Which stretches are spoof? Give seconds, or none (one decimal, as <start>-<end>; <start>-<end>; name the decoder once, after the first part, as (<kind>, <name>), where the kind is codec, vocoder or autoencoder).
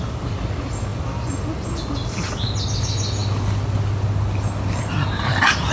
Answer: none